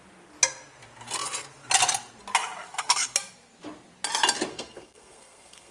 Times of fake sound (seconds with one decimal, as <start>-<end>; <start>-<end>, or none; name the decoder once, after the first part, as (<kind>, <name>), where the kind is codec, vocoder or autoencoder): 4.5-5.7 (codec, SNAC)